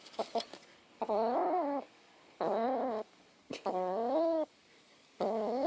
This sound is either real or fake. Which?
fake